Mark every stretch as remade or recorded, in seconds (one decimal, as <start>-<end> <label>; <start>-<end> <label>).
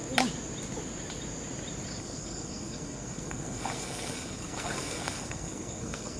0.0-2.0 recorded; 2.0-6.2 remade